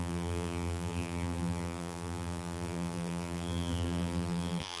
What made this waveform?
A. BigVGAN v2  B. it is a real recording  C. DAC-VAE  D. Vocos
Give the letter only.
A